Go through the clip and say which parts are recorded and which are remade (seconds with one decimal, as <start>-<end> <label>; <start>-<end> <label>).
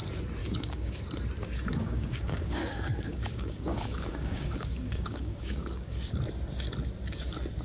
0.0-0.4 recorded; 0.4-1.0 remade; 1.0-1.7 recorded; 1.7-6.2 remade; 6.2-7.6 recorded